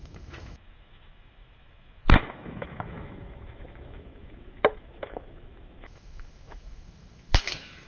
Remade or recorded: remade